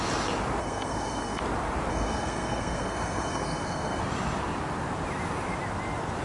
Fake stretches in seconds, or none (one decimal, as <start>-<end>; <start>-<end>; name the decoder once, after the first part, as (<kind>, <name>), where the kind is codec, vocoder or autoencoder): 0.6-1.4 (codec, SNAC); 1.9-4.0